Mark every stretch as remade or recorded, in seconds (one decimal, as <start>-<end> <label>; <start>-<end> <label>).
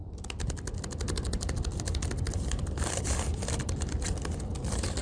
0.0-5.0 recorded